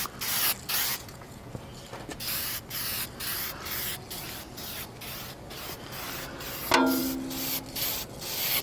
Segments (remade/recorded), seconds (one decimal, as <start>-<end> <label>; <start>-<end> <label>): 0.0-0.9 recorded; 0.9-1.5 remade; 1.5-8.6 recorded